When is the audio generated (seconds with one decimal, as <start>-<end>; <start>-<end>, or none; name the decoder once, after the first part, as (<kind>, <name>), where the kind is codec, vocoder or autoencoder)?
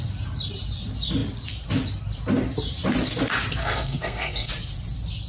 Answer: 3.6-4.5 (codec, SNAC)